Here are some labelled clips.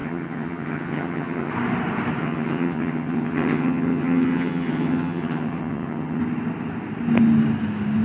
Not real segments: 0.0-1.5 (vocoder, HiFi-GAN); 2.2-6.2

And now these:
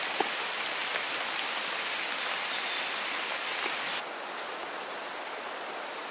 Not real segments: none

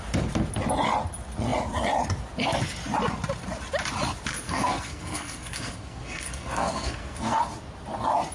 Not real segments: 4.3-7.4 (codec, SNAC)